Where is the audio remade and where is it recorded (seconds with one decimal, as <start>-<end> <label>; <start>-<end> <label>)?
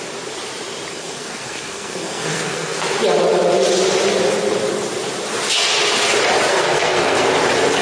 0.0-0.9 recorded; 0.9-2.8 remade; 2.8-6.5 recorded; 6.5-7.3 remade; 7.3-7.8 recorded